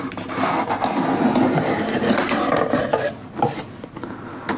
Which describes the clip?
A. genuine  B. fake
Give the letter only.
A